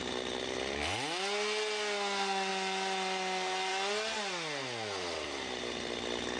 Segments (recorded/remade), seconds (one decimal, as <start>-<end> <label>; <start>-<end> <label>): 0.0-6.4 recorded